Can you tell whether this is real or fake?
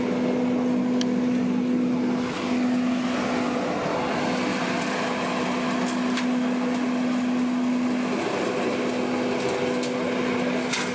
real